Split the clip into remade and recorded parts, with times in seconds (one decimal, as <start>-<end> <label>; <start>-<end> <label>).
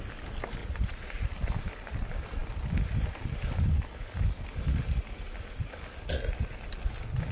0.0-0.6 recorded; 0.6-1.3 remade; 1.3-7.3 recorded